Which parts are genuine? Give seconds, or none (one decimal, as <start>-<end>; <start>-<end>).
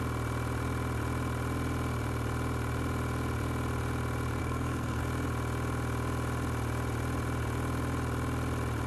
0.0-4.4; 5.0-8.9